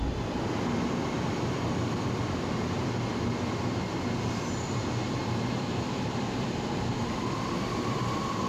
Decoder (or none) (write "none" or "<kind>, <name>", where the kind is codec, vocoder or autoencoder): vocoder, BigVGAN v2